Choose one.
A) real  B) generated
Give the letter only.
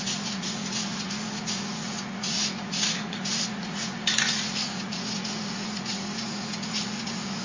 B